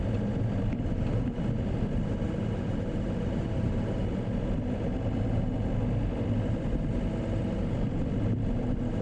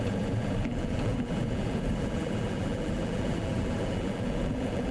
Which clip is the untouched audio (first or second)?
first